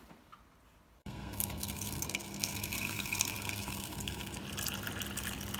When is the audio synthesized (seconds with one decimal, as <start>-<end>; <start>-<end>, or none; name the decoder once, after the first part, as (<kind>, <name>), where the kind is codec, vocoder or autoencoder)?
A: 1.0-4.4 (codec, SNAC)